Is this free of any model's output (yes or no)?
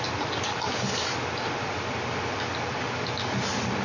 yes